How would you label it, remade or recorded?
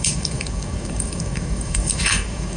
remade